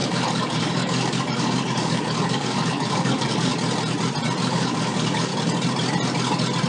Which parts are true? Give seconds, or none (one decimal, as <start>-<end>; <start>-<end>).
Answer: 3.5-4.5; 5.3-6.7